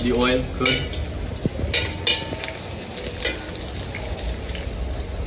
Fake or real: real